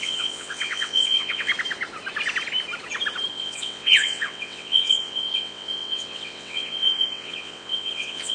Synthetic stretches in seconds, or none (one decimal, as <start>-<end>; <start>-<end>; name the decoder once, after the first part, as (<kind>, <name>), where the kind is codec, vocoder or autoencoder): 0.0-1.5 (vocoder, WaveNeXt); 3.3-8.3